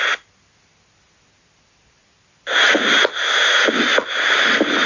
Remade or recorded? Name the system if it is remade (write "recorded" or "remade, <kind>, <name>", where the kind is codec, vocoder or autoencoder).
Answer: recorded